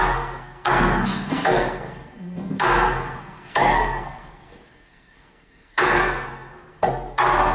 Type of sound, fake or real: fake